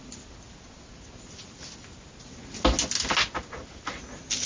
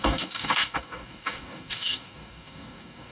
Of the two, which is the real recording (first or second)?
first